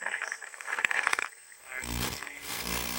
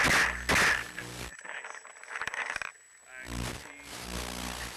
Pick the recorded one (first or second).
second